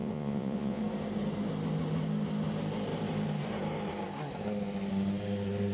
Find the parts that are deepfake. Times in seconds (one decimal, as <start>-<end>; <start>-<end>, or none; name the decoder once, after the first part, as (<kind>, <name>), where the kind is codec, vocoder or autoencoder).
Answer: 0.0-0.8 (vocoder, Vocos)